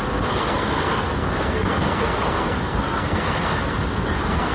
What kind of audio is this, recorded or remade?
remade